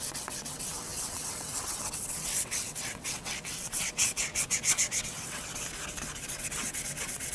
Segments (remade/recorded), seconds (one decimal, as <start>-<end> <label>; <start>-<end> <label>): 0.0-5.5 remade; 5.5-6.2 recorded; 6.2-7.3 remade